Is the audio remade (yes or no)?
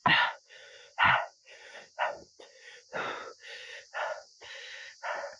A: yes